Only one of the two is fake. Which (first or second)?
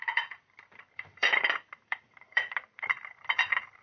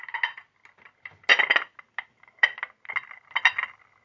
first